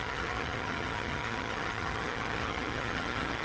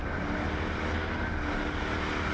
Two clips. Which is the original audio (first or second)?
second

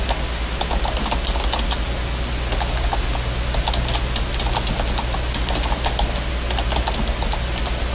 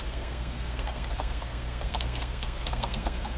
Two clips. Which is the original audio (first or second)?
first